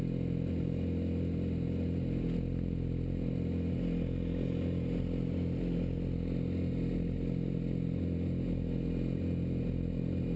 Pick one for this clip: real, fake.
real